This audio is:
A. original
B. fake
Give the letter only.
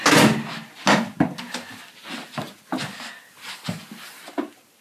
A